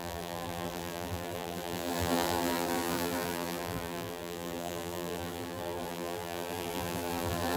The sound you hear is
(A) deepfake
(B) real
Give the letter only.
A